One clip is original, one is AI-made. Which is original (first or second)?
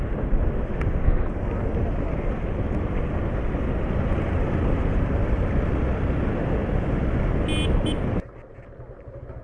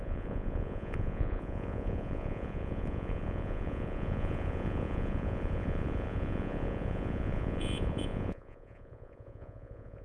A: first